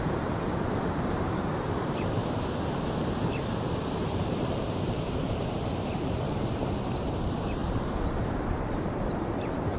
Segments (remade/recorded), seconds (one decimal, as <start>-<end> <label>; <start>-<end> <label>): 0.0-2.2 remade; 2.2-3.9 recorded; 3.9-9.8 remade